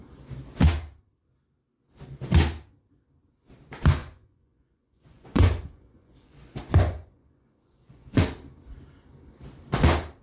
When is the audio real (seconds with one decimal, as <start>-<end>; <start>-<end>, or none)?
0.0-4.0; 8.2-10.2